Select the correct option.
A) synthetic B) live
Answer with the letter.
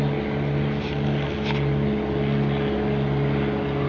B